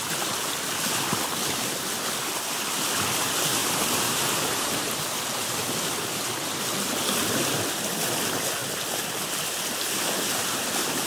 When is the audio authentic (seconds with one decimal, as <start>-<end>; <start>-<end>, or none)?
0.0-3.6; 5.0-11.1